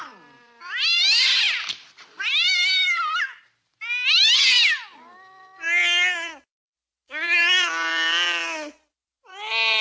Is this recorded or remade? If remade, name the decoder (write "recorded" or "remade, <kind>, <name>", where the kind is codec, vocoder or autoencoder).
recorded